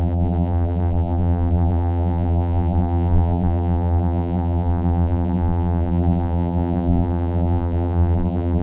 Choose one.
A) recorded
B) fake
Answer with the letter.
B